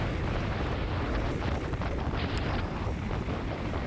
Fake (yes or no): yes